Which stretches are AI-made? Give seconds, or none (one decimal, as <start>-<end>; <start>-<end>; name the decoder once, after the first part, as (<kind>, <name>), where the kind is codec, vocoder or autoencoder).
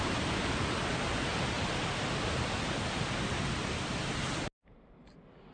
none